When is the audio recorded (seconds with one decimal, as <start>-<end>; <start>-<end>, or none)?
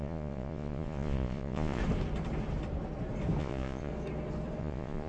1.8-3.4; 3.9-4.6